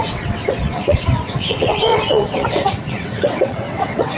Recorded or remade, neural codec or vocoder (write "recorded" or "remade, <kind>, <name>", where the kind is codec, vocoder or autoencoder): remade, vocoder, WaveNeXt